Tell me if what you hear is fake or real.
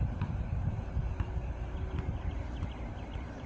fake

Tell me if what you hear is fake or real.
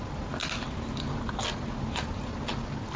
real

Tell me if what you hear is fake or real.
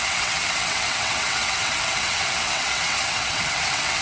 fake